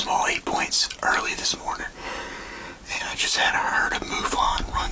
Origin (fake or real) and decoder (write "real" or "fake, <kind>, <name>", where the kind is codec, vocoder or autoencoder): real